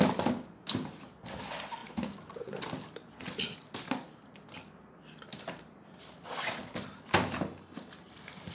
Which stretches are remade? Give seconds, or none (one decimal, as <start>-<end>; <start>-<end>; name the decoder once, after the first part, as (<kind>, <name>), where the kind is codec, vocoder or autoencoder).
none